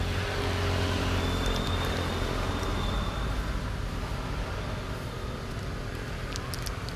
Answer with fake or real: real